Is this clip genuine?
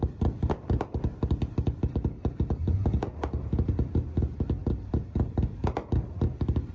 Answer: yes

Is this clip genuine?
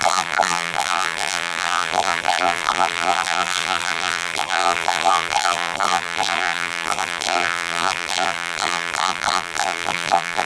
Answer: no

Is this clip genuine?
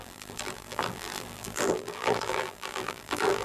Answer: no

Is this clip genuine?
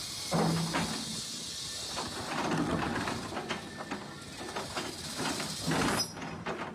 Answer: yes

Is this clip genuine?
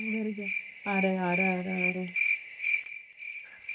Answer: yes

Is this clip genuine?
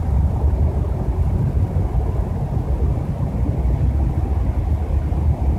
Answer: yes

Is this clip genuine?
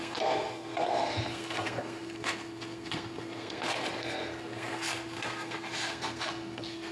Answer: no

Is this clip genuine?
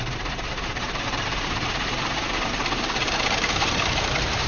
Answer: no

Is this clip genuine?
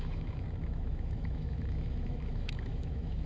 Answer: no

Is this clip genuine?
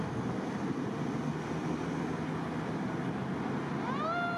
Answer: yes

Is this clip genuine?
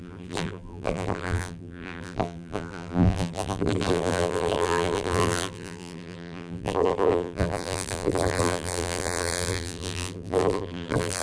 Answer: no